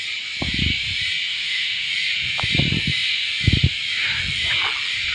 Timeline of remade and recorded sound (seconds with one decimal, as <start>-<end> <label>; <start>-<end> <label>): 0.0-1.3 recorded; 1.3-1.9 remade; 1.9-5.1 recorded